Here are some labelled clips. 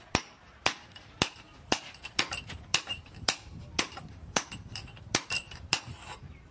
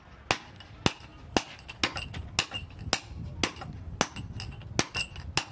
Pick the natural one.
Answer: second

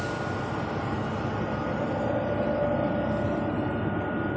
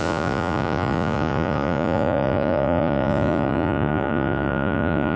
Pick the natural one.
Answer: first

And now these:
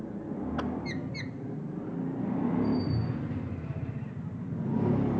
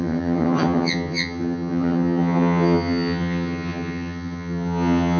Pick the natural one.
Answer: first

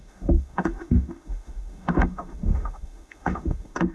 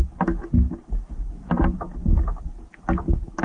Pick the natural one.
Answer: second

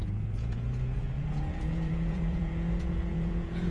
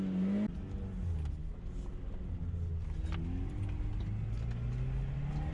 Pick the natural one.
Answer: second